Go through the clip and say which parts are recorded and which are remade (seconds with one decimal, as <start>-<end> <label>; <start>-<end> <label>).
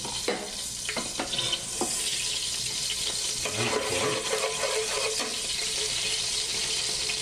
0.0-5.3 recorded; 5.3-6.8 remade; 6.8-7.2 recorded